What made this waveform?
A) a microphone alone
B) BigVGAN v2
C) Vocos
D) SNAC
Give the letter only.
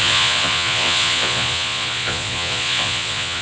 C